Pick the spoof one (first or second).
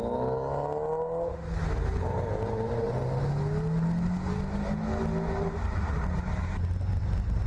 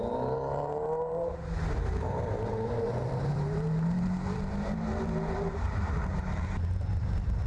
second